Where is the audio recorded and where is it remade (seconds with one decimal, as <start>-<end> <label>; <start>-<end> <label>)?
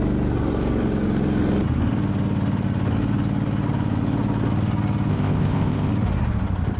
0.0-5.1 recorded; 5.1-5.9 remade; 5.9-6.8 recorded